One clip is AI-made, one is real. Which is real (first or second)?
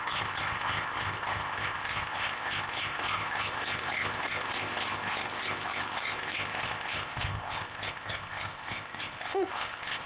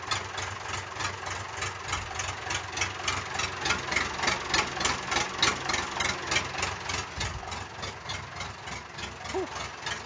second